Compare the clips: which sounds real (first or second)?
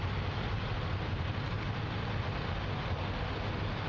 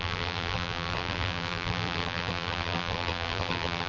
first